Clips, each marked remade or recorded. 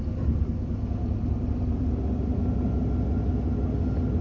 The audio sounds recorded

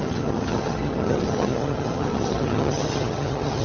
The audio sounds remade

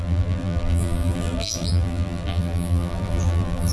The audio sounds remade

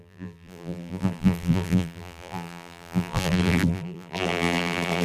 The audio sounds remade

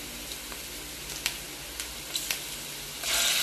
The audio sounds recorded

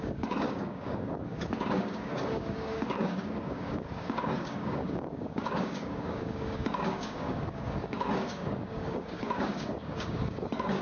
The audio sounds remade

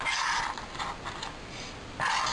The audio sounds recorded